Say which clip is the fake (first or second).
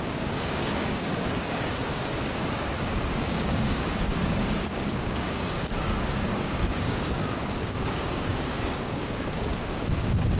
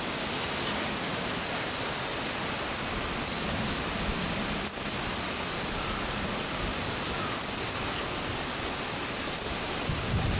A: first